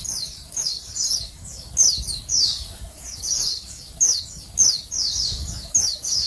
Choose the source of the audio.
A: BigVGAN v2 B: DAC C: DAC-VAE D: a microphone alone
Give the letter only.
B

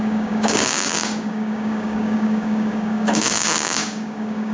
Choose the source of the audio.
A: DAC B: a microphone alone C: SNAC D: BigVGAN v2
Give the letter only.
A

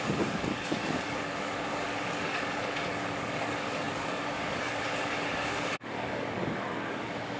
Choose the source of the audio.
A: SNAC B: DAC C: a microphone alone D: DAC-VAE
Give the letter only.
B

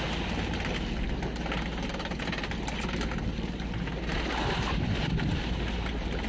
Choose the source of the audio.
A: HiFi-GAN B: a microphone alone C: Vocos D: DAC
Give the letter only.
B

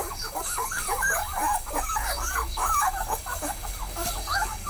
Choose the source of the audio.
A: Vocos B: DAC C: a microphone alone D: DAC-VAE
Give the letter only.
B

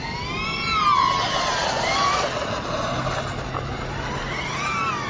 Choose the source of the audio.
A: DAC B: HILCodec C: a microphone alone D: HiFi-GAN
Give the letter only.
C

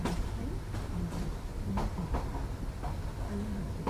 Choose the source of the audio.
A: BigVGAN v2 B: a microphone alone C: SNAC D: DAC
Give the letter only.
B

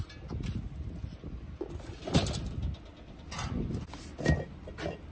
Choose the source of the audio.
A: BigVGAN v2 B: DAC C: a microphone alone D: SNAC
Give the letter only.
C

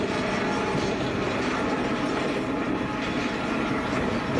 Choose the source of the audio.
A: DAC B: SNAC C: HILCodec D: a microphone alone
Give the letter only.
D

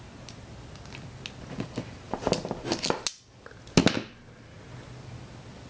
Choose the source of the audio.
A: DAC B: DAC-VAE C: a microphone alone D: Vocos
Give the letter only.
C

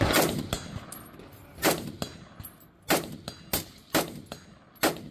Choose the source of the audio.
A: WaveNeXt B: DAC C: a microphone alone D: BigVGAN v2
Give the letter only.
C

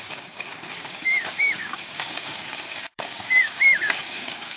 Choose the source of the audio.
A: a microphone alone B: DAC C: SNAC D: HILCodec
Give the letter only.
B